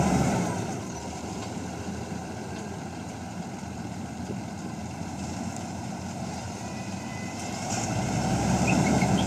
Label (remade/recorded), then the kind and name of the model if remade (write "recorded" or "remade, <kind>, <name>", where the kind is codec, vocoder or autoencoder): remade, vocoder, BigVGAN v2